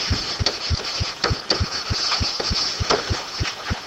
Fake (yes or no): no